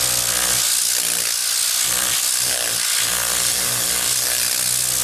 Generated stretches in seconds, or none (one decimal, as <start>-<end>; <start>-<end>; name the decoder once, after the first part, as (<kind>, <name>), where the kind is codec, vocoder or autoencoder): none